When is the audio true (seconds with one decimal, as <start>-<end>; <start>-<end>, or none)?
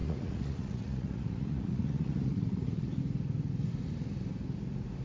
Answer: 3.0-5.0